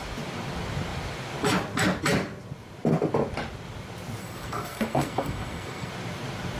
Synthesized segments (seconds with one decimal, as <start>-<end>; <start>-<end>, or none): 4.2-5.9